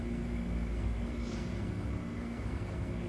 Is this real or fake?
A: fake